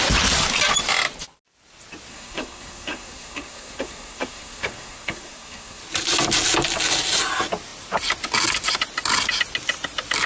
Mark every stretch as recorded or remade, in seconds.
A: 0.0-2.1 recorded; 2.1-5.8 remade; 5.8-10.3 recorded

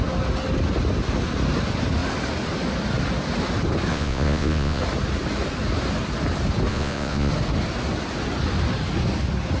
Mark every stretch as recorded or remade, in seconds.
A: 0.0-3.9 recorded; 3.9-4.8 remade; 4.8-6.7 recorded; 6.7-7.3 remade; 7.3-9.6 recorded

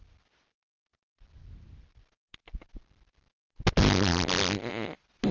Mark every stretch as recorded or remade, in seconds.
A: 0.0-5.3 recorded

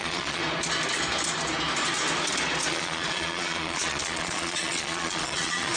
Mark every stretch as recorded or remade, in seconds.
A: 0.0-0.4 remade; 0.4-2.7 recorded; 2.7-5.8 remade

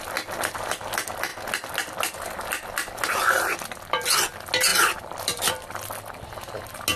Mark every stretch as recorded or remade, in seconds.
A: 0.0-4.7 recorded; 4.7-5.7 remade; 5.7-7.0 recorded

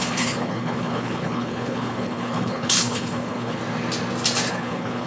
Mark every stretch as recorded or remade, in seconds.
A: 0.0-3.6 remade; 3.6-4.5 recorded; 4.5-5.1 remade

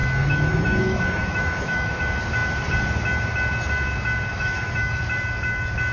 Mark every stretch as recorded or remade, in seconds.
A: 0.0-2.0 remade; 2.0-4.3 recorded; 4.3-5.0 remade; 5.0-5.9 recorded

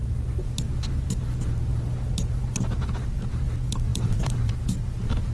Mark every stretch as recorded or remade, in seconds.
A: 0.0-3.9 recorded; 3.9-4.5 remade; 4.5-5.3 recorded